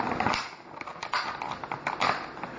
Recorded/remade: recorded